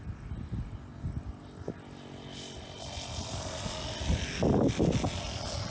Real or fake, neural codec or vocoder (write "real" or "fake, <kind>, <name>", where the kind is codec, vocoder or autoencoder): real